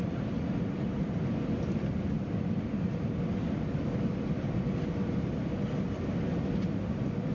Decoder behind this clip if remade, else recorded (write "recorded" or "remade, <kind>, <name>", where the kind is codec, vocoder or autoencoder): recorded